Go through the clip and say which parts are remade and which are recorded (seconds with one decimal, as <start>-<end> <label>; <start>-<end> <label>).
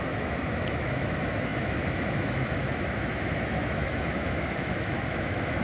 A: 0.0-5.6 remade